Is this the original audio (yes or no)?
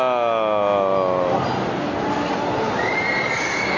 yes